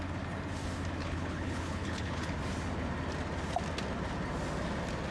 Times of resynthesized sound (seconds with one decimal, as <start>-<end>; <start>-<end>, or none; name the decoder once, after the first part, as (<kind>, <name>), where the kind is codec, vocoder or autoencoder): 1.0-2.4 (codec, HILCodec)